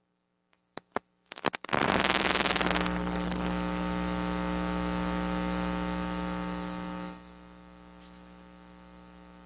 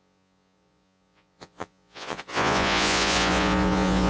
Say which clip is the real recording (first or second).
first